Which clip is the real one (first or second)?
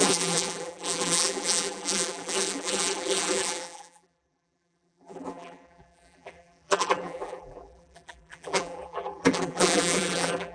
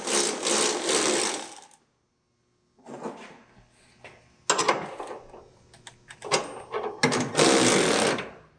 second